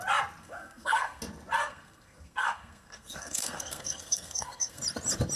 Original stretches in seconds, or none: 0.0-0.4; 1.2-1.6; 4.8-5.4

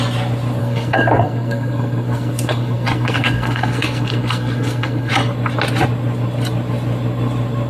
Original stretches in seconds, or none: 0.0-0.6; 5.1-7.7

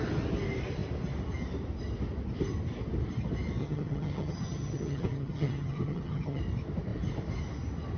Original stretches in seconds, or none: 0.0-3.6; 6.4-8.0

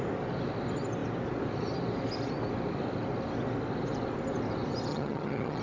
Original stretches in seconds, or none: 0.0-4.9

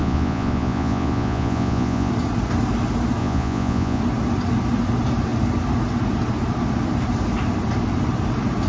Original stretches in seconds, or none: 2.1-3.2; 4.0-8.7

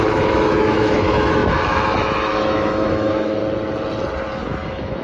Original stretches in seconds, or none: 3.4-4.4